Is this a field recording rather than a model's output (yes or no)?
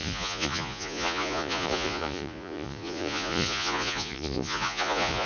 no